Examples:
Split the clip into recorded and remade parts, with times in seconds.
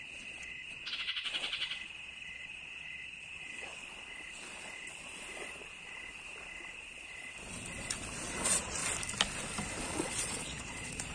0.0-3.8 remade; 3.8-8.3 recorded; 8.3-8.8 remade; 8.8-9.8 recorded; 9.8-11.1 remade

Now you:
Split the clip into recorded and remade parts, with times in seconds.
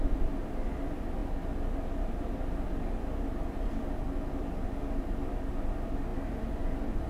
0.0-7.1 recorded